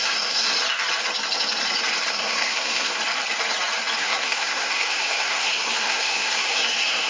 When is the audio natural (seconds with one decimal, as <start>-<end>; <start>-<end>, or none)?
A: 0.5-2.1; 3.0-4.0